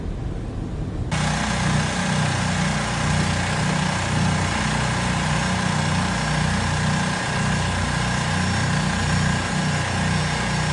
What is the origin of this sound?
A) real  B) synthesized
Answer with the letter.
A